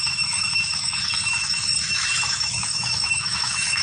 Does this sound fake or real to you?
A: fake